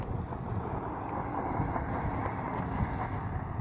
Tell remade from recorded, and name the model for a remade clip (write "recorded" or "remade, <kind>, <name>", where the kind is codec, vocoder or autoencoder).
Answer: recorded